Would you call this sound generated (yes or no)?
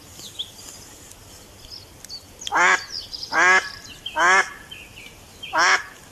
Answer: no